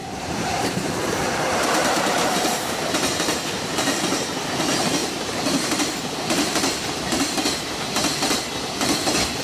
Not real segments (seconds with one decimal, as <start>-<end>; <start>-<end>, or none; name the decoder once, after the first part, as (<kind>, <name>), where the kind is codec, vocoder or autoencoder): 0.0-4.5 (vocoder, BigVGAN v2); 5.0-7.0